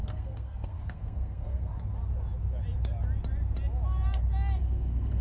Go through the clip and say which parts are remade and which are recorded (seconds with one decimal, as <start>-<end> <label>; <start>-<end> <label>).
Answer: 0.0-1.7 remade; 1.7-4.6 recorded; 4.6-5.2 remade